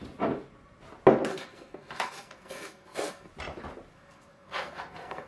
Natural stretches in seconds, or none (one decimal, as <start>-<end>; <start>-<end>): 0.0-1.3; 3.3-3.9